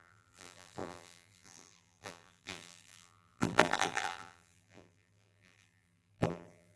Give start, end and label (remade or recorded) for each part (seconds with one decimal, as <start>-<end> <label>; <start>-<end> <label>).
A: 0.0-6.8 remade